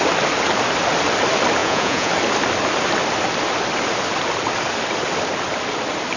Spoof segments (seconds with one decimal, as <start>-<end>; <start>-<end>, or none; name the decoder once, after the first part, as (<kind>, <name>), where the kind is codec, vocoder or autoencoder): 1.6-2.1 (vocoder, Vocos)